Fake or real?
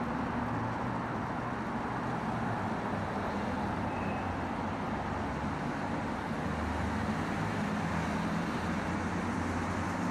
real